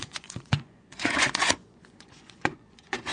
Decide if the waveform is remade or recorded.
remade